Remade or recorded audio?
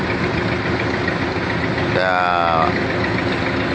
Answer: recorded